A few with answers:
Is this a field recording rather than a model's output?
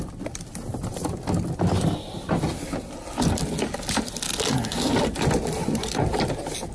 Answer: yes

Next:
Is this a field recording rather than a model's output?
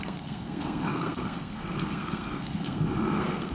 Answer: no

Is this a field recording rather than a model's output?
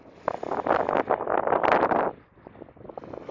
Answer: yes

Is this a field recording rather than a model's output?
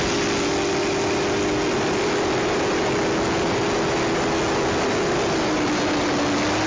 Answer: yes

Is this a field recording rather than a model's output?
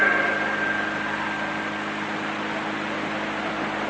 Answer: yes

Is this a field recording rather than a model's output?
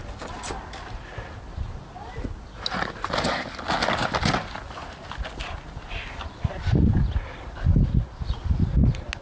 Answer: yes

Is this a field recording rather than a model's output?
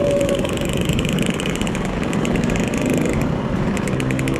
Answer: no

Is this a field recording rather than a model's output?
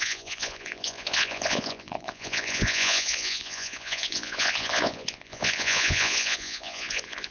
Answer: no